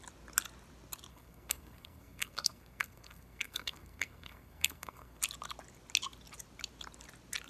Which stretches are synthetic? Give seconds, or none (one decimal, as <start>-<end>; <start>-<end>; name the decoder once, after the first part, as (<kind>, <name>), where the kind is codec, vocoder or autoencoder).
1.1-5.2 (codec, SNAC)